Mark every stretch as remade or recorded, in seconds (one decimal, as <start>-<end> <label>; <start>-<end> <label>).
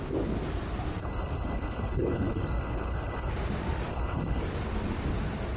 0.0-1.0 recorded; 1.0-3.3 remade; 3.3-3.9 recorded; 3.9-4.4 remade; 4.4-5.6 recorded